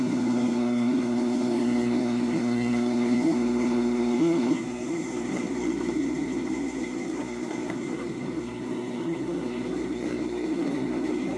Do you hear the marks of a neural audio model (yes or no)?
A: yes